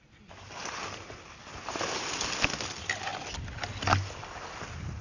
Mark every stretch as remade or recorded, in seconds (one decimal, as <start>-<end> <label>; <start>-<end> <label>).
0.0-5.0 recorded